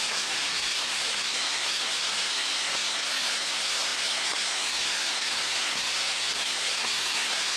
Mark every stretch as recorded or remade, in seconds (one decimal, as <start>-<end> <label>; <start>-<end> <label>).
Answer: 0.0-7.6 remade